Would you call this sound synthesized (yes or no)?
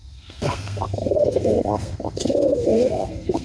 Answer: yes